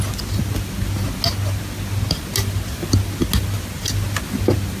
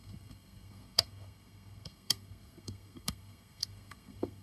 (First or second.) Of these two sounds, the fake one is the second